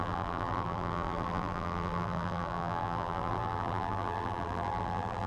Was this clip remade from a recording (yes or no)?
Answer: yes